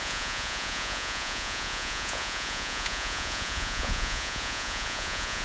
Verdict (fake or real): fake